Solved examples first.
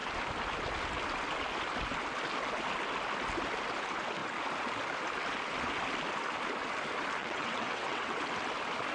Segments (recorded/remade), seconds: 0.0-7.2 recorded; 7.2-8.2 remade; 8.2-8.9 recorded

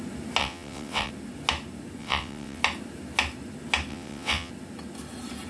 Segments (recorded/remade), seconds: 0.0-0.4 recorded; 0.4-1.1 remade; 1.1-2.0 recorded; 2.0-2.6 remade; 2.6-3.9 recorded; 3.9-4.5 remade; 4.5-5.5 recorded